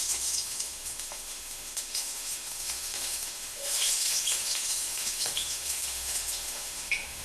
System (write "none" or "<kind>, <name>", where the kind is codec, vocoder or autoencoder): autoencoder, DAC-VAE